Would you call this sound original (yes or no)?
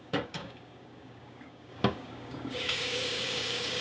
no